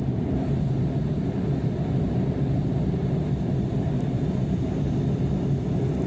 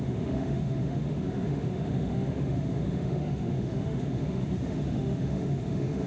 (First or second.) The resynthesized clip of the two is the second